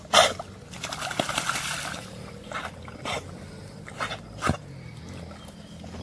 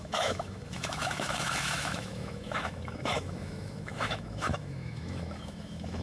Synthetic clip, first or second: second